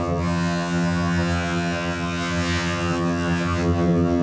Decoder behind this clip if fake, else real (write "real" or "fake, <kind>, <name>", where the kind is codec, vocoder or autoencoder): fake, vocoder, HiFi-GAN